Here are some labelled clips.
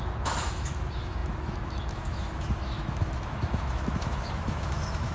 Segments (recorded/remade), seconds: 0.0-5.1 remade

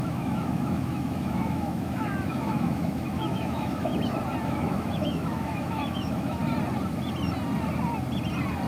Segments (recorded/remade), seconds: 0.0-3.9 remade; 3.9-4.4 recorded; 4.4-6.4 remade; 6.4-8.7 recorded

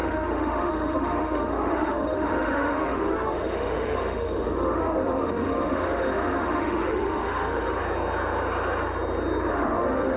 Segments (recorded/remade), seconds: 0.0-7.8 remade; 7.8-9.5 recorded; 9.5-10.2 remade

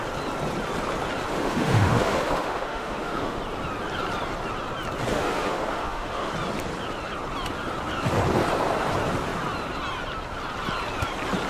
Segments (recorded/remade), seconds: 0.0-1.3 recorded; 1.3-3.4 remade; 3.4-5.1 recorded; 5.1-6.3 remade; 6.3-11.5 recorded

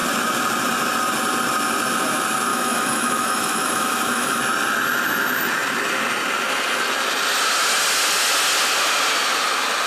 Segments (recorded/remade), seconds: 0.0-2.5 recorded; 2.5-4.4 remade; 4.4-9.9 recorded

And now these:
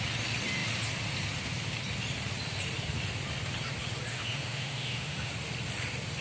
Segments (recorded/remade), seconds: 0.0-4.1 recorded; 4.1-5.3 remade; 5.3-6.2 recorded

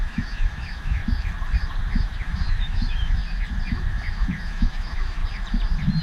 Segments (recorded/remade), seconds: 0.0-1.0 remade; 1.0-1.9 recorded; 1.9-3.2 remade; 3.2-3.7 recorded; 3.7-5.2 remade; 5.2-6.0 recorded